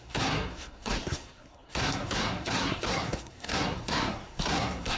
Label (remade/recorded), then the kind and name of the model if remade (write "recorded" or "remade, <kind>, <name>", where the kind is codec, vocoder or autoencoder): remade, codec, SNAC